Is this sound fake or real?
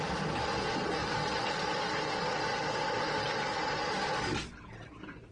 real